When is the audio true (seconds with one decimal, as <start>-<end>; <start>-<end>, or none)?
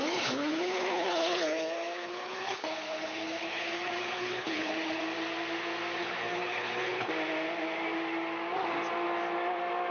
5.0-6.0; 7.1-9.9